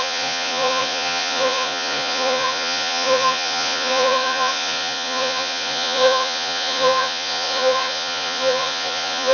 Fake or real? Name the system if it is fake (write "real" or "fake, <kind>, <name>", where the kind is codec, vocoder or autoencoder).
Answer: fake, vocoder, Vocos